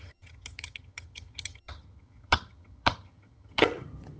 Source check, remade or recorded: remade